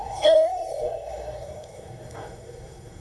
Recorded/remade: remade